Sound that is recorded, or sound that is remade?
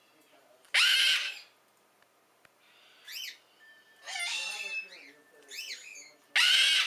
recorded